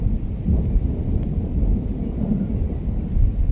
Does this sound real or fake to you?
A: real